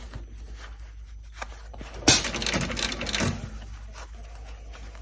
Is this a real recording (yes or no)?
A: yes